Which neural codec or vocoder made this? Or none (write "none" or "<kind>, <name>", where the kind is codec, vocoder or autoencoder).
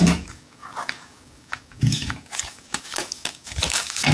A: codec, DAC